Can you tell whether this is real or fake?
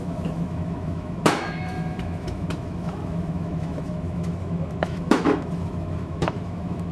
fake